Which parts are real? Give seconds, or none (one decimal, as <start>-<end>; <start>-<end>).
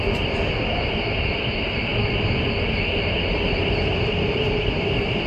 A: 0.0-5.3